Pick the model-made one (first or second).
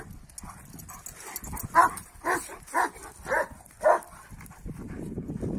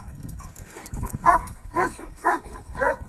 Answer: second